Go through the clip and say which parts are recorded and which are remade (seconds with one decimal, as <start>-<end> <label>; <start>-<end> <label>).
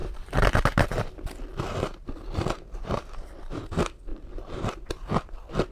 0.0-3.4 remade; 3.4-4.1 recorded; 4.1-4.9 remade; 4.9-5.7 recorded